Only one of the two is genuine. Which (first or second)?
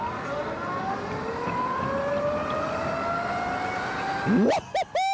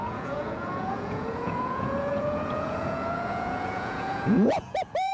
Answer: first